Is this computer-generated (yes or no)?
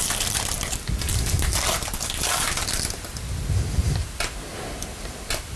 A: no